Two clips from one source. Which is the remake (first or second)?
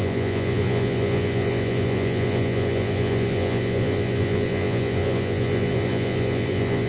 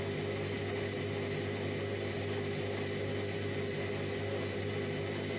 first